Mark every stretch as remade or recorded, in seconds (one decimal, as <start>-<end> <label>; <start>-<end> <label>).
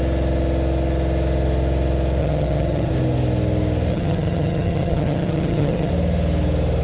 0.0-2.2 recorded; 2.2-2.9 remade; 2.9-3.9 recorded; 3.9-5.9 remade; 5.9-6.8 recorded